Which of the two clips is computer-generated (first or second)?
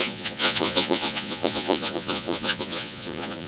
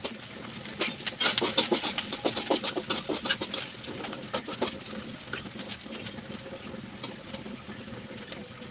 first